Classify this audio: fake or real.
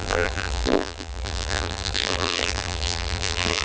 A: fake